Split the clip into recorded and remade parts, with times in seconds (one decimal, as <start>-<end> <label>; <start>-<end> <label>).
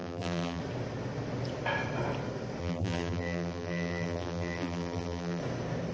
0.0-0.6 remade; 0.6-2.6 recorded; 2.6-5.4 remade; 5.4-5.9 recorded